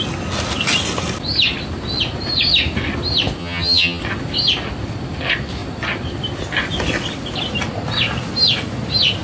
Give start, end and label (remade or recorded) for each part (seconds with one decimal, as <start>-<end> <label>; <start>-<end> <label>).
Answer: 0.0-3.4 recorded; 3.4-4.0 remade; 4.0-9.2 recorded